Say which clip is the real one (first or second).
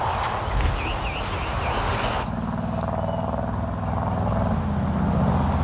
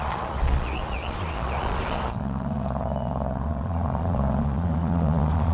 first